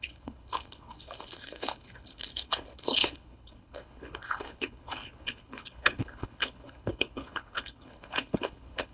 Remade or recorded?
remade